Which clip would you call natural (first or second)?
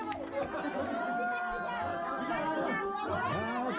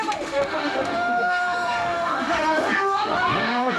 first